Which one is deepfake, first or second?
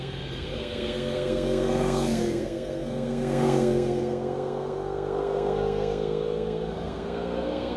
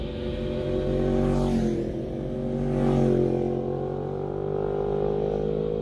first